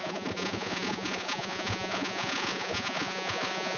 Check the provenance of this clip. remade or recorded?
remade